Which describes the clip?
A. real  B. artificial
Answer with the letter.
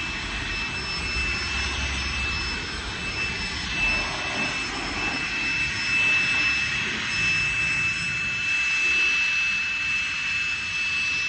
A